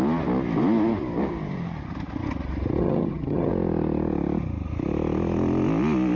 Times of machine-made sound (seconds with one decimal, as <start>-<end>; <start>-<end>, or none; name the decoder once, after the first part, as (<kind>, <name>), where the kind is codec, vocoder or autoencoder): 2.8-3.5 (vocoder, HiFi-GAN)